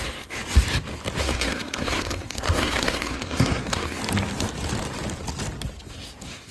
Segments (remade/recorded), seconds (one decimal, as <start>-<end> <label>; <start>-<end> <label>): 0.0-0.4 remade; 0.4-1.2 recorded; 1.2-4.0 remade; 4.0-5.9 recorded; 5.9-6.5 remade